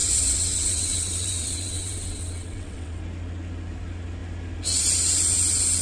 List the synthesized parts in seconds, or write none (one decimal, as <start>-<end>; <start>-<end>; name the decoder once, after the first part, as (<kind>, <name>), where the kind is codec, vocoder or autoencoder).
0.0-3.0 (vocoder, WaveNeXt)